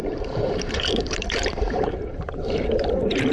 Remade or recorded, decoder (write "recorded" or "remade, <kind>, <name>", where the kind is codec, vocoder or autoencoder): remade, vocoder, BigVGAN v2